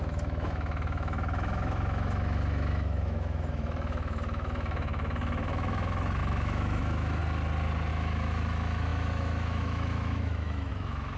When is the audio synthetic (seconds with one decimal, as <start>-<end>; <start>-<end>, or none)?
0.0-7.2; 7.9-11.2